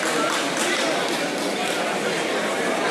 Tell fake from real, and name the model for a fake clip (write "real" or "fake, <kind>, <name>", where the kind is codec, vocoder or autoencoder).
real